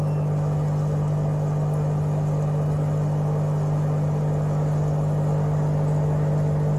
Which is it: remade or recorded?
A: recorded